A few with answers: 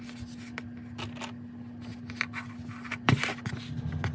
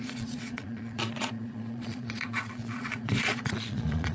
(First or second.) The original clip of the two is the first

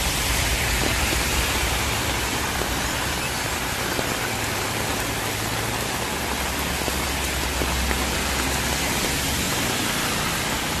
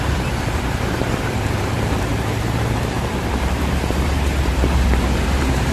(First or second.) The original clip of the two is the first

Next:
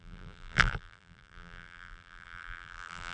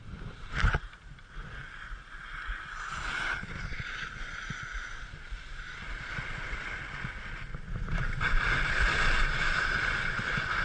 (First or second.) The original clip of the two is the second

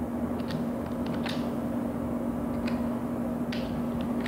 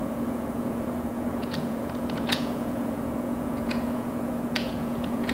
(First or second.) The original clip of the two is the first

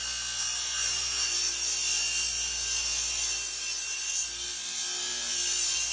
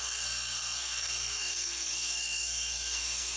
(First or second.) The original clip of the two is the first